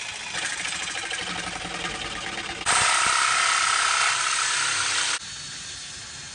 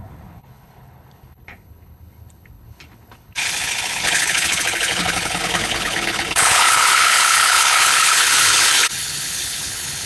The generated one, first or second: second